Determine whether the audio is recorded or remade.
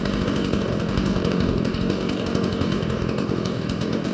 remade